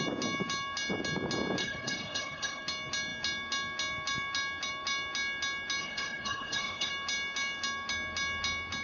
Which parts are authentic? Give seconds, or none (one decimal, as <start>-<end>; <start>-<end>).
0.0-1.6; 2.6-5.8; 6.9-8.8